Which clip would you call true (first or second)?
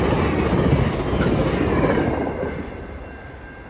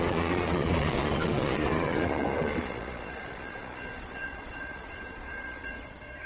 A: first